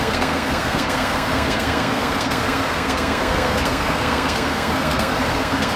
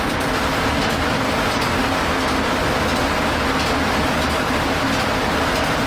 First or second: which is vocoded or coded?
first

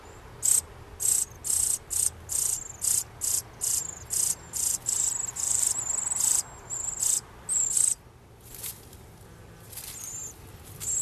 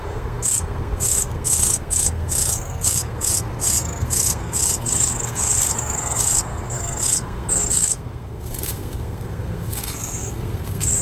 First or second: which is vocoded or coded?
second